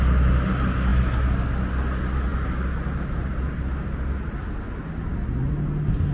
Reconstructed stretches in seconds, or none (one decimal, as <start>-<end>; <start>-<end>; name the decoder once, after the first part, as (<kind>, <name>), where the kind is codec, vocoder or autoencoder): none